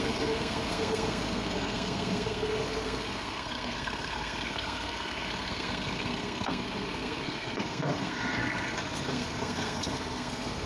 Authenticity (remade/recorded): remade